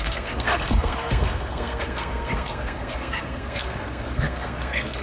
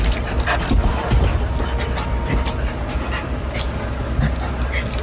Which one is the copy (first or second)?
first